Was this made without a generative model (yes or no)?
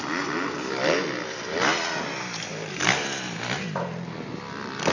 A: yes